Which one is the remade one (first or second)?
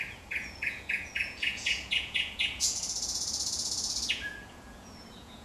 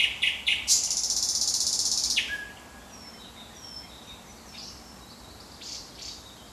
first